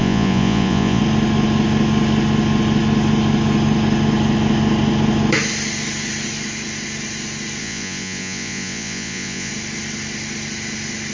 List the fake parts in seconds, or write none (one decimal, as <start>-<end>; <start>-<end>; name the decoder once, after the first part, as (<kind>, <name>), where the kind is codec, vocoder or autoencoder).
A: 0.0-1.0 (vocoder, Vocos); 7.6-9.5